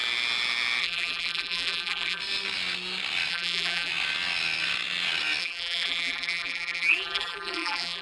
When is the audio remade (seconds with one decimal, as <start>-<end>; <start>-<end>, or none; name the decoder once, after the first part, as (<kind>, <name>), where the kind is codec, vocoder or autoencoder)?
0.8-2.2 (vocoder, BigVGAN v2); 3.3-3.9; 5.4-8.0